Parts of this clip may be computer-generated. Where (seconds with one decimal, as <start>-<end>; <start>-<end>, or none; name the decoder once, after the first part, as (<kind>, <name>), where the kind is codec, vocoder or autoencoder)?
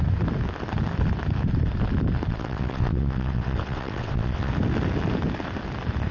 2.3-4.5 (vocoder, WaveNeXt)